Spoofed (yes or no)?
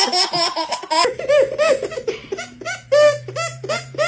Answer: no